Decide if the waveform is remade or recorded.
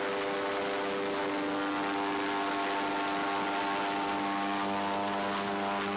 recorded